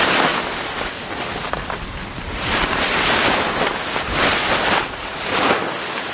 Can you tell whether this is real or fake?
real